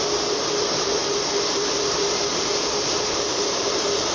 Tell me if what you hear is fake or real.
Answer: fake